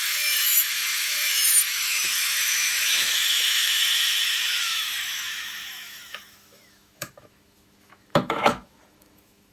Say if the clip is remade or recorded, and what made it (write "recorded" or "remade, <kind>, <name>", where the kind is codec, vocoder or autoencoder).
remade, autoencoder, DAC-VAE